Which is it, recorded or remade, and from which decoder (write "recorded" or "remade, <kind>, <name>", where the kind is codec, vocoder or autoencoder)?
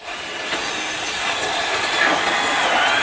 recorded